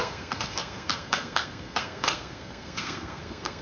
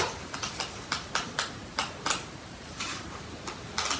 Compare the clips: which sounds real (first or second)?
second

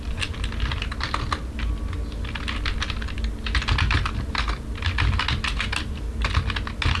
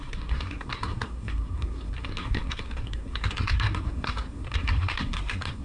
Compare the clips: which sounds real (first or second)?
first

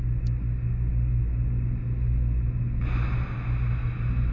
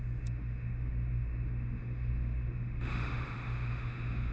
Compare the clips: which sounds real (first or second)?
first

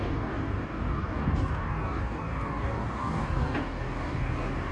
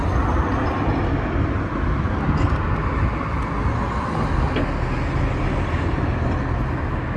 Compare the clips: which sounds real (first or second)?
second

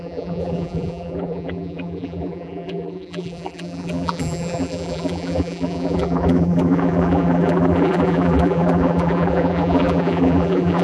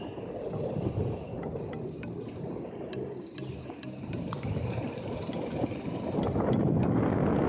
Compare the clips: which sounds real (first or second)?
second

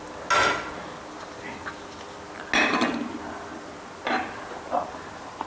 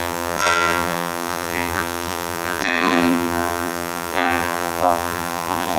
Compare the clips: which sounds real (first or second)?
first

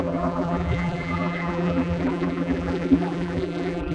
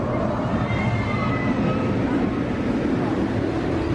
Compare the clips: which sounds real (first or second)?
second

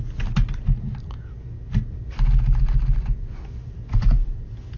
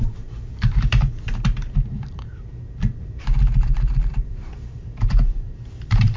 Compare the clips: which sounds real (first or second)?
first